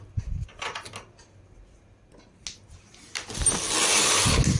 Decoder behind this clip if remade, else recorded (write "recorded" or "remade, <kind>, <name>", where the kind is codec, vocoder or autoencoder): recorded